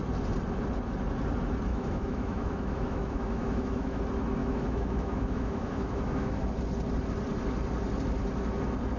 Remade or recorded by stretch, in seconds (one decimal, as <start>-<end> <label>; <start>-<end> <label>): 0.0-1.7 recorded; 1.7-4.0 remade; 4.0-4.4 recorded; 4.4-6.4 remade; 6.4-9.0 recorded